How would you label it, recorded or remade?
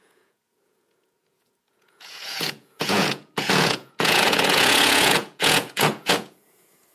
remade